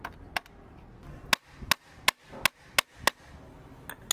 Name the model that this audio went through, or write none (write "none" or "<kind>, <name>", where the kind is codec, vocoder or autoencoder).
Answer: none